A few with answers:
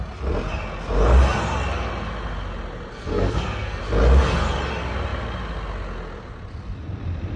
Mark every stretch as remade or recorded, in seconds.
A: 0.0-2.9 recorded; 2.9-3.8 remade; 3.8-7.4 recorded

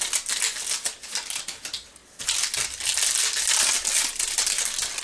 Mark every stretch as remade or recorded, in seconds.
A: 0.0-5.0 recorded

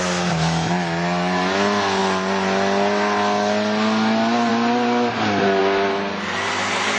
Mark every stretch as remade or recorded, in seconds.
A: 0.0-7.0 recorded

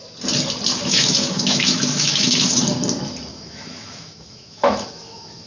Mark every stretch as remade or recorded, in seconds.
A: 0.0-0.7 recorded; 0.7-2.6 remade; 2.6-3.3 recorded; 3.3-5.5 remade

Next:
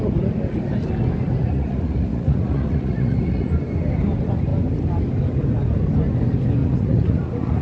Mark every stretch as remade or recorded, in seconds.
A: 0.0-1.4 recorded; 1.4-3.5 remade; 3.5-6.6 recorded; 6.6-7.6 remade

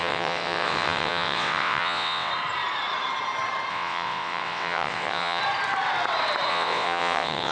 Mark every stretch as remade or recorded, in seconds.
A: 0.0-2.3 remade; 2.3-3.7 recorded; 3.7-5.4 remade; 5.4-6.5 recorded; 6.5-7.5 remade